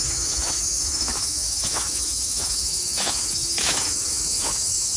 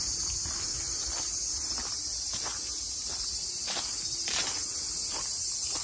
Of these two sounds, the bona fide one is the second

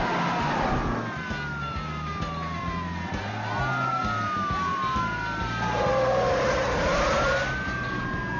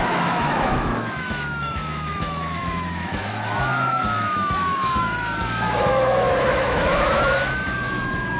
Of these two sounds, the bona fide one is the first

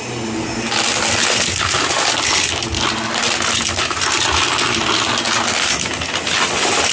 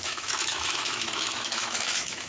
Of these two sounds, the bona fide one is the first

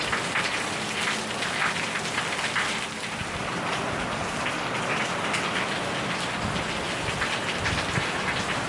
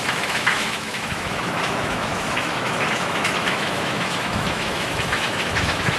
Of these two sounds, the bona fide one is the first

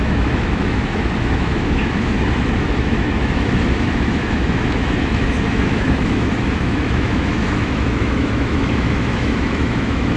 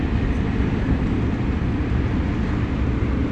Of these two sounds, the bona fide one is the second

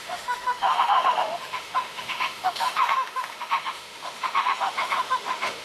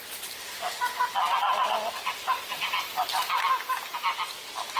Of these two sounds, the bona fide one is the second